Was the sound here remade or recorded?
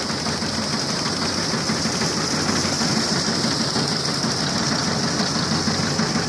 recorded